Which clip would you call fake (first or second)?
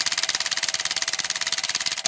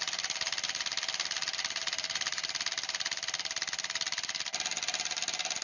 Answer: second